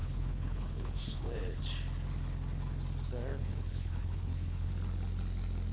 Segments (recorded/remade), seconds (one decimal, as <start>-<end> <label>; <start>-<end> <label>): 0.0-1.6 remade; 1.6-3.3 recorded; 3.3-4.7 remade; 4.7-5.7 recorded

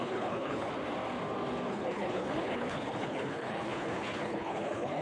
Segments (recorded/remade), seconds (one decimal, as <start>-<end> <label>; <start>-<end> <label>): 0.0-0.7 remade; 0.7-1.7 recorded; 1.7-5.0 remade

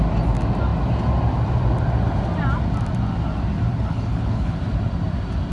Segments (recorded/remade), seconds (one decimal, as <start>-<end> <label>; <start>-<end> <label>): 0.0-3.7 recorded; 3.7-4.6 remade; 4.6-5.5 recorded